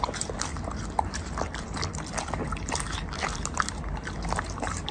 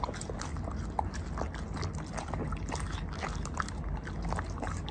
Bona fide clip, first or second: second